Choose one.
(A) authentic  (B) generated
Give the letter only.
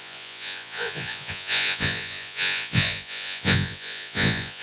B